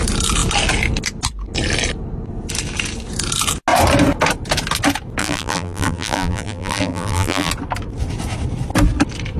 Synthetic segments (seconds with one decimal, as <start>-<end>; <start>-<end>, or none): 5.2-7.5